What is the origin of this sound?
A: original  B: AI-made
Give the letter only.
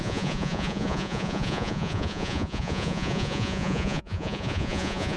B